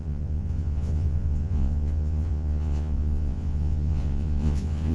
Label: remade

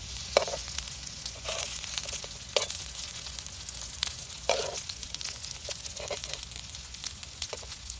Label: remade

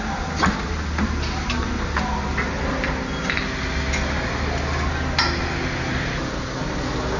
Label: recorded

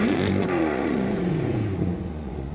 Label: remade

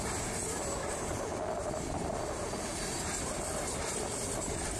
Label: recorded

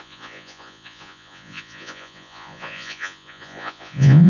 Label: remade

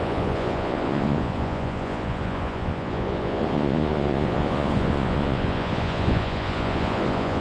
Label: remade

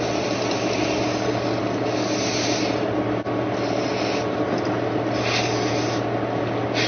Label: recorded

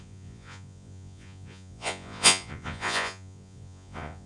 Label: remade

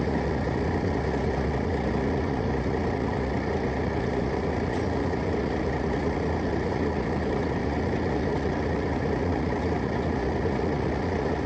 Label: remade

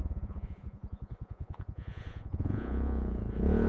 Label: remade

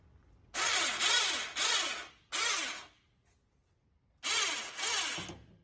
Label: recorded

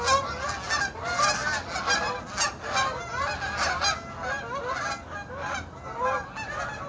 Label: recorded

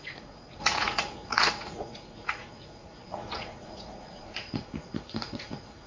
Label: remade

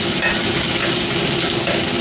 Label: recorded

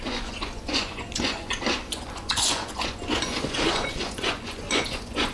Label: remade